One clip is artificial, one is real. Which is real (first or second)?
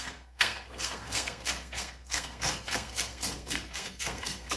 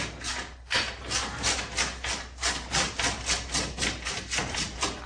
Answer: second